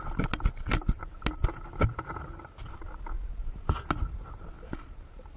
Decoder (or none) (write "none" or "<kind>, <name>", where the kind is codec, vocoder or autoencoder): none